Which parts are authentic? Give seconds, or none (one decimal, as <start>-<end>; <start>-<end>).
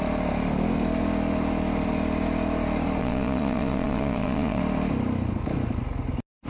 0.0-3.0; 4.6-6.5